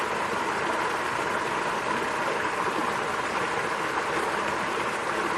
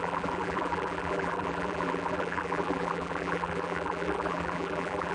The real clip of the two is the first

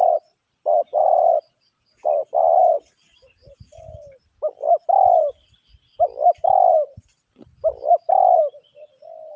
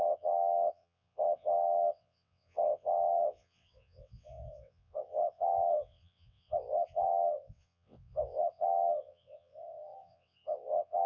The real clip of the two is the first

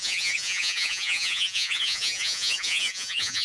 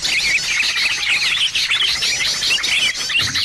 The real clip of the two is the second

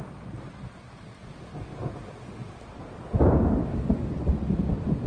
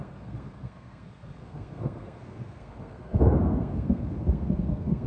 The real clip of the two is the first